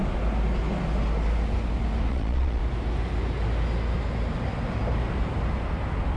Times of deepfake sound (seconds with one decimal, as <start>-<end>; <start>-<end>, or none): 2.1-2.6